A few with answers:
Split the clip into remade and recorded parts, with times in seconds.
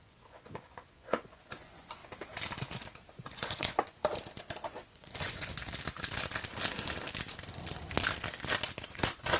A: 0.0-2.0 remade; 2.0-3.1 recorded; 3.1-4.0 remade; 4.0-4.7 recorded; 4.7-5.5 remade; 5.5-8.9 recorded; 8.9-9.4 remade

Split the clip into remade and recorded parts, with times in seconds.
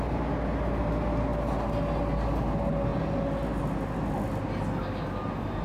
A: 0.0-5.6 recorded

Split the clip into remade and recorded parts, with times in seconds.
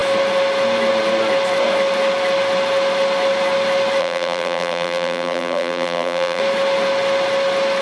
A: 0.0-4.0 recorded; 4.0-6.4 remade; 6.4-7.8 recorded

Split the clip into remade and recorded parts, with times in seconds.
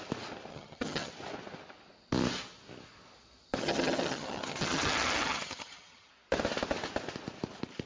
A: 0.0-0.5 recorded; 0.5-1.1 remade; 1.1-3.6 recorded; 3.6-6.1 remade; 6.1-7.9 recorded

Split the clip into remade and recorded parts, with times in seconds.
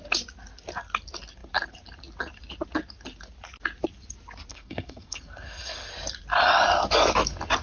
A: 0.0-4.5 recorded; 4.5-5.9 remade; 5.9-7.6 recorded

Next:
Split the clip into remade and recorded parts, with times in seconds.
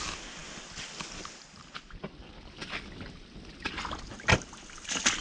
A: 0.0-5.2 recorded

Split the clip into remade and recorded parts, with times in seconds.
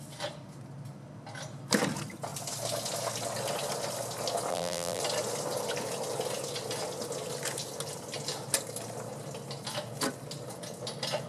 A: 0.0-4.5 recorded; 4.5-5.0 remade; 5.0-11.3 recorded